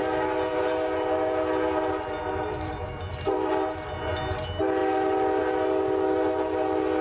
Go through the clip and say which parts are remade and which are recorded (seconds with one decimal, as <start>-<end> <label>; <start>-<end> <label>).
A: 0.0-2.7 recorded; 2.7-3.5 remade; 3.5-7.0 recorded